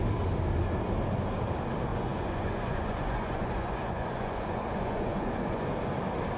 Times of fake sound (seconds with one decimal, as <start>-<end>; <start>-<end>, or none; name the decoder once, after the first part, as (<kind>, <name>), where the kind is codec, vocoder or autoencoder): 1.9-5.7 (vocoder, Vocos)